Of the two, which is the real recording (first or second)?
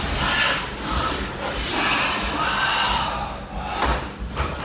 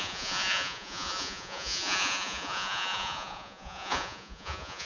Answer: first